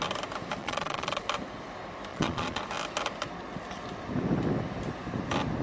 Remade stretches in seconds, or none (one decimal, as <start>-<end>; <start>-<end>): 0.6-1.2; 2.1-2.6